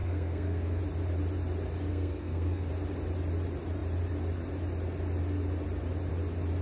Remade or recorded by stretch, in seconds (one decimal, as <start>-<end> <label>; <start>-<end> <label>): 0.0-0.8 remade; 0.8-1.9 recorded; 1.9-2.7 remade; 2.7-6.6 recorded